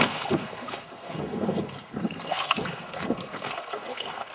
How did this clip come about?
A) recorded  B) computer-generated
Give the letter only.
B